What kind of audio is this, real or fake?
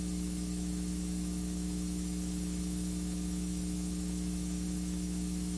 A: fake